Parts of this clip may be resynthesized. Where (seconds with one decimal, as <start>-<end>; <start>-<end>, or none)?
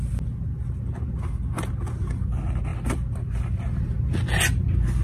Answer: none